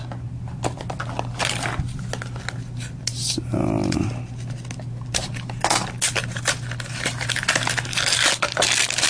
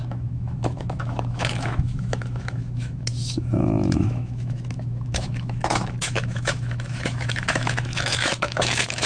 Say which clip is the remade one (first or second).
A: second